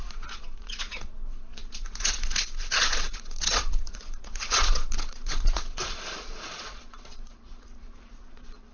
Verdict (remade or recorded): remade